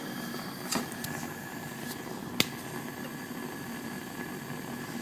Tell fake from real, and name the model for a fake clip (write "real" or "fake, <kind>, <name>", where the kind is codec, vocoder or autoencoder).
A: real